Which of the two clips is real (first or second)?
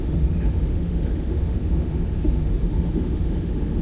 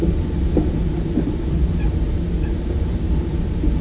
second